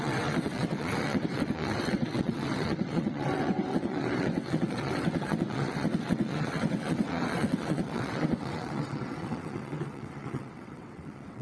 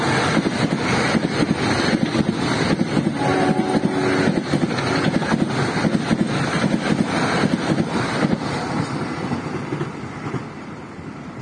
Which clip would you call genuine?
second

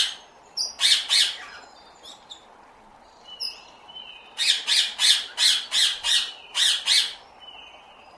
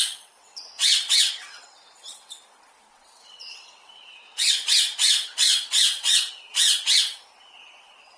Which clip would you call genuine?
first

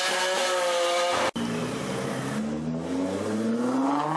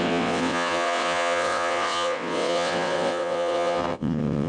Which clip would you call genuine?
first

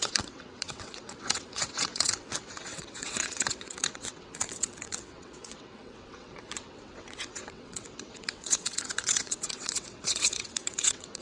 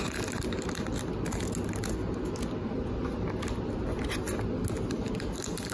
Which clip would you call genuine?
second